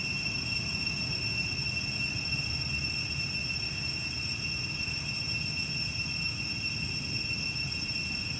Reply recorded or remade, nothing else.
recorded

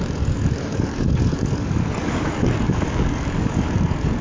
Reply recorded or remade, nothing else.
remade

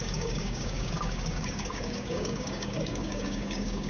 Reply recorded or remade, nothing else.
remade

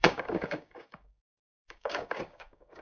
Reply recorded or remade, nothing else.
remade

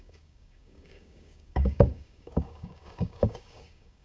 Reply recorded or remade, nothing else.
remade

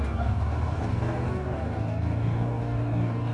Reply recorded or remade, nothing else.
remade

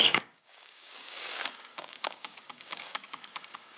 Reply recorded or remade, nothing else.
remade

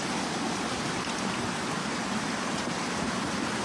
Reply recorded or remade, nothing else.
recorded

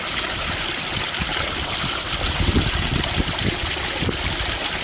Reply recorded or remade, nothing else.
recorded